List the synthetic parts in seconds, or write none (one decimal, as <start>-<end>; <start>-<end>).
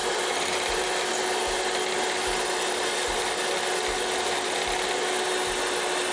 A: none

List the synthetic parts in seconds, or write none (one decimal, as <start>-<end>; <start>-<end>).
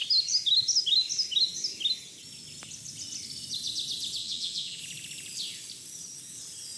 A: 4.2-4.8